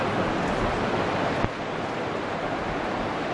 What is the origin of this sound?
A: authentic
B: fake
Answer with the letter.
A